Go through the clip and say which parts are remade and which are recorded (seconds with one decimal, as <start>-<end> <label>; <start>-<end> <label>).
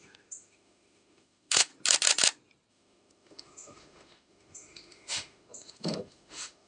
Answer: 0.0-1.7 remade; 1.7-2.7 recorded; 2.7-6.7 remade